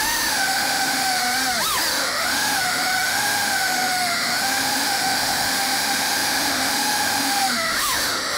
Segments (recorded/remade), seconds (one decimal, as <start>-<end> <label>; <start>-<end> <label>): 0.0-1.2 remade; 1.2-1.9 recorded; 1.9-8.4 remade